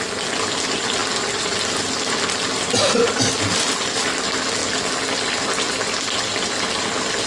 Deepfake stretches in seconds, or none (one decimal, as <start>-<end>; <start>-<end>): none